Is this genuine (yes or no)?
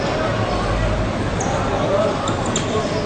yes